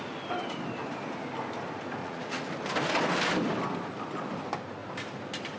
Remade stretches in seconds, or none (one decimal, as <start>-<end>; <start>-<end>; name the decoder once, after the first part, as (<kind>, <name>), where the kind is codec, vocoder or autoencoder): 2.0-2.5 (vocoder, Vocos)